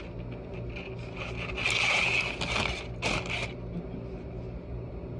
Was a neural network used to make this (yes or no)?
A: no